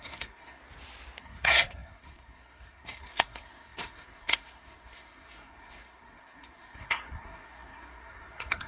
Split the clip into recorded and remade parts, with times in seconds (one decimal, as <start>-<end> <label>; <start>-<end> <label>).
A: 0.0-0.6 remade; 0.6-1.2 recorded; 1.2-8.7 remade

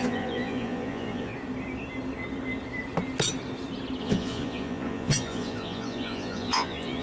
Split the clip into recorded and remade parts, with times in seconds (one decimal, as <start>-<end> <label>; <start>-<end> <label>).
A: 0.0-1.3 remade; 1.3-4.0 recorded; 4.0-7.0 remade

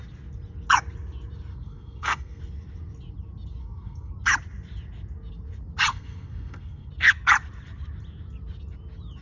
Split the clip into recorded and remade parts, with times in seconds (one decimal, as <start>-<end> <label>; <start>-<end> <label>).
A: 0.0-1.5 recorded; 1.5-2.4 remade; 2.4-3.6 recorded; 3.6-4.1 remade; 4.1-5.9 recorded; 5.9-6.9 remade; 6.9-9.2 recorded

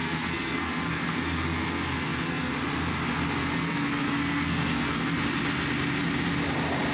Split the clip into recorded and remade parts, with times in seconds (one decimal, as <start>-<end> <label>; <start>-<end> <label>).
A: 0.0-2.5 remade; 2.5-3.4 recorded; 3.4-5.2 remade; 5.2-6.9 recorded

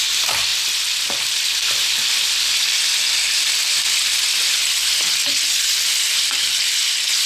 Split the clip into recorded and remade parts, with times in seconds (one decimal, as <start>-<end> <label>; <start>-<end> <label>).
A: 0.0-0.5 remade; 0.5-3.8 recorded; 3.8-5.2 remade; 5.2-6.2 recorded; 6.2-7.3 remade

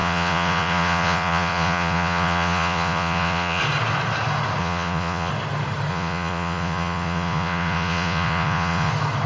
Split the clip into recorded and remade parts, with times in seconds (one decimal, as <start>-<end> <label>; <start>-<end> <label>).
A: 0.0-3.6 remade; 3.6-4.6 recorded; 4.6-5.3 remade; 5.3-5.9 recorded; 5.9-8.9 remade; 8.9-9.3 recorded

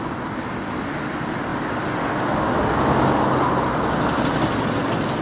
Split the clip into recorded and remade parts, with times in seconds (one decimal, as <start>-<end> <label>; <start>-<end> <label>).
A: 0.0-5.2 recorded